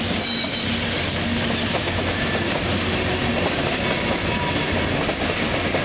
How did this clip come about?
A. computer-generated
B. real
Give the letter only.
B